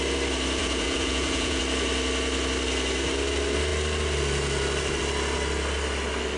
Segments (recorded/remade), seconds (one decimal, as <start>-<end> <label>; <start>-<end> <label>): 0.0-0.6 recorded; 0.6-1.6 remade; 1.6-6.4 recorded